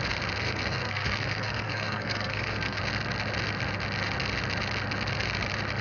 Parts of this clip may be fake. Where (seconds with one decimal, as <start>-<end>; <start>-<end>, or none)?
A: 0.4-2.8